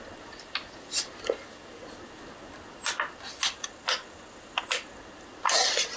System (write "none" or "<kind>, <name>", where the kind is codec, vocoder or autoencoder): none